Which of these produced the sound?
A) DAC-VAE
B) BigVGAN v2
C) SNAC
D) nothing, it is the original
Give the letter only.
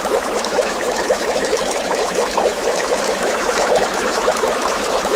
A